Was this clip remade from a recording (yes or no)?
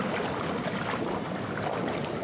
no